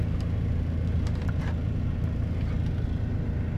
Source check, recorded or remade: recorded